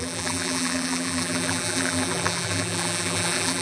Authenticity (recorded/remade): remade